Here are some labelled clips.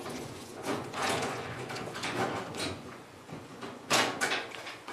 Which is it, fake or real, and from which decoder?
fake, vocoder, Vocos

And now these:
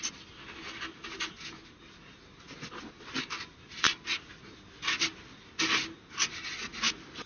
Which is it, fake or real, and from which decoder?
real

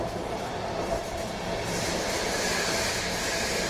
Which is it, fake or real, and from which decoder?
fake, vocoder, BigVGAN v2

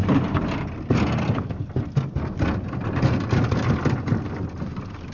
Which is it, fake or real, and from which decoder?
real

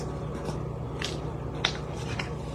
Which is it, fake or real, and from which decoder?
real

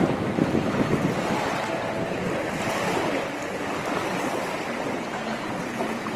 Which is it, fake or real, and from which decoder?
real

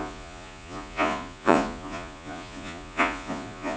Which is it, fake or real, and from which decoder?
fake, vocoder, Vocos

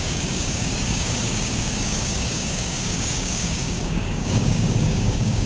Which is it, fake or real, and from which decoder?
fake, codec, DAC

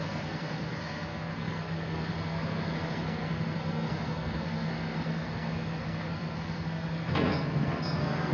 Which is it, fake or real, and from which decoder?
fake, codec, SNAC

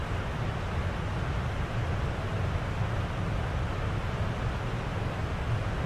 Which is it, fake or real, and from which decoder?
real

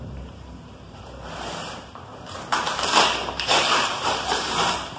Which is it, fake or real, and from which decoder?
fake, vocoder, BigVGAN v2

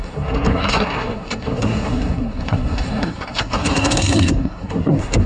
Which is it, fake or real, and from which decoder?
fake, codec, SNAC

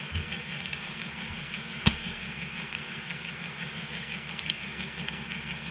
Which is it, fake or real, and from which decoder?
fake, codec, SNAC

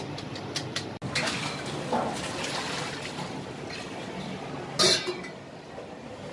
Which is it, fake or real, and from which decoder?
real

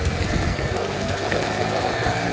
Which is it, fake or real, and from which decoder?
fake, codec, SNAC